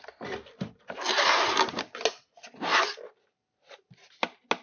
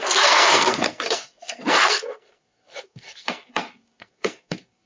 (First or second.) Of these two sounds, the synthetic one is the second